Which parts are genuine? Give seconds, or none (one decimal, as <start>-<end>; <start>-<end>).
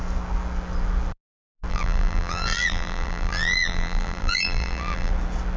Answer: 0.0-1.7; 5.1-5.6